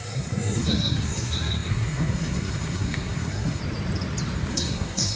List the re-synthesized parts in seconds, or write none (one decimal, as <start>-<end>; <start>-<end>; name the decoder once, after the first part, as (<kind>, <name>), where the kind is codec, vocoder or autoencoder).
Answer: 0.0-3.6 (codec, SNAC); 4.5-5.2